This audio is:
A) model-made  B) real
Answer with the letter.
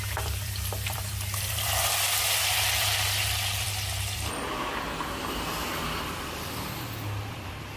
A